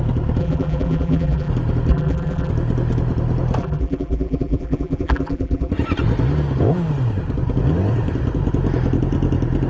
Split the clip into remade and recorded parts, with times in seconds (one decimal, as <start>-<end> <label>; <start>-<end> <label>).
0.0-0.4 recorded; 0.4-1.5 remade; 1.5-1.9 recorded; 1.9-2.5 remade; 2.5-3.6 recorded; 3.6-5.7 remade; 5.7-9.7 recorded